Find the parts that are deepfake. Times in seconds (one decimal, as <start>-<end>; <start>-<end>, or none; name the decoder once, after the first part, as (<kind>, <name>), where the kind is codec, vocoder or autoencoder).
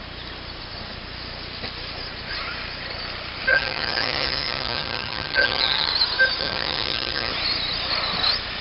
3.5-5.9 (vocoder, HiFi-GAN); 6.4-7.3